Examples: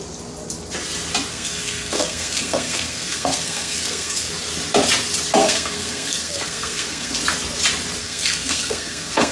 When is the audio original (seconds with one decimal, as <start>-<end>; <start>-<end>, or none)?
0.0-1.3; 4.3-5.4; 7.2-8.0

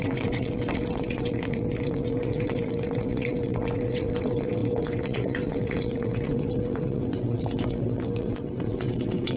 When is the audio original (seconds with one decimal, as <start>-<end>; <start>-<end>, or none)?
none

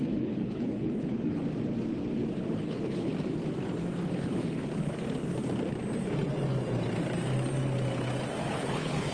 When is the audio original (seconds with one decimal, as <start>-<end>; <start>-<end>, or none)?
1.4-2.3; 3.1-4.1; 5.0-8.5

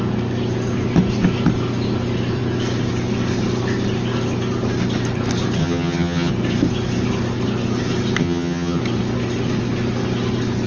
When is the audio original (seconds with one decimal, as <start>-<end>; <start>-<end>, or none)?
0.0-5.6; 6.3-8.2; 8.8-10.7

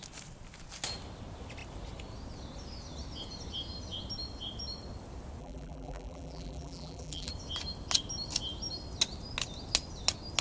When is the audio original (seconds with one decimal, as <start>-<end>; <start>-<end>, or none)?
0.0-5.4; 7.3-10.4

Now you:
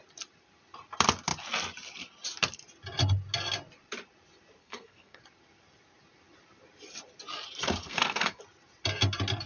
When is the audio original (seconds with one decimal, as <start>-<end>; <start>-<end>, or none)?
0.0-4.6; 5.2-7.8; 8.4-9.5